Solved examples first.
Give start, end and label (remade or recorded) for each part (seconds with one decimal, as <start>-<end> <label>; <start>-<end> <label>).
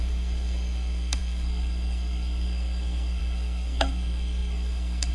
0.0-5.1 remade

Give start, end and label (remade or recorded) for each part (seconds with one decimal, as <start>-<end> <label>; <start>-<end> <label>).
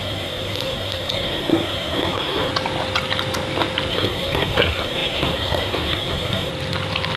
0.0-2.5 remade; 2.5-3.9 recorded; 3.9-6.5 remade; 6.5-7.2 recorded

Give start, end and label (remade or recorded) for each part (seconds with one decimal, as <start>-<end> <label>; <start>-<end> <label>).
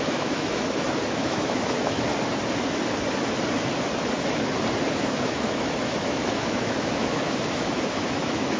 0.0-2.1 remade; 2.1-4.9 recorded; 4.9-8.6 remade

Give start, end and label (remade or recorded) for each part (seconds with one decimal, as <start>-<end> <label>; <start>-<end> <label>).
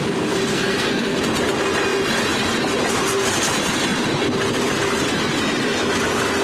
0.0-0.5 recorded; 0.5-1.2 remade; 1.2-6.4 recorded